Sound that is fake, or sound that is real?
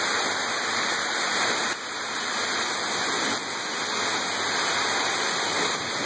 real